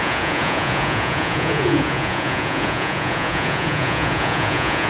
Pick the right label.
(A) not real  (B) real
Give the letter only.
A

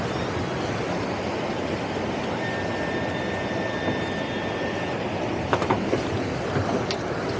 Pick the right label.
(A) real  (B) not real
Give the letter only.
A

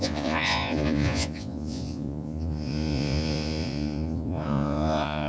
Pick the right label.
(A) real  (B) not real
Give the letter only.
B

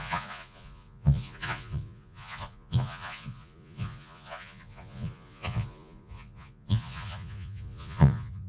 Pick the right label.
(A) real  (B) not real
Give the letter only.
B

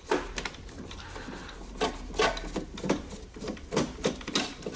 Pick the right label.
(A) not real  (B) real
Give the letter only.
B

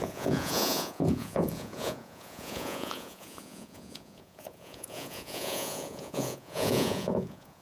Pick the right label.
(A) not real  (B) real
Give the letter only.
A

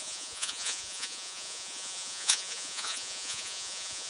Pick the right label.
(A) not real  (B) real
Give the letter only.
A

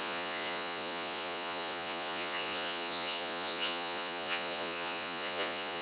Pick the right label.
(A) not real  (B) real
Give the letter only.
A